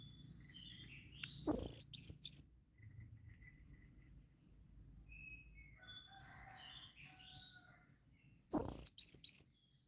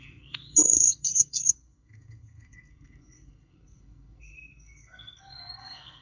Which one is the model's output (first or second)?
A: second